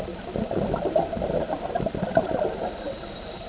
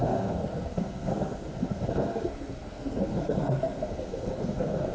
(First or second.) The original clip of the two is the first